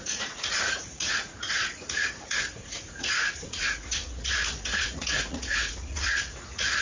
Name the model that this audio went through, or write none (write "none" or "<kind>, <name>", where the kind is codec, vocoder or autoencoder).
vocoder, Vocos